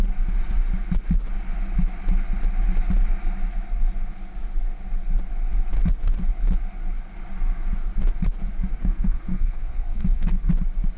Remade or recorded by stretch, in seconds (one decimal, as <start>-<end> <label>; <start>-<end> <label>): 0.0-8.7 recorded; 8.7-10.5 remade; 10.5-11.0 recorded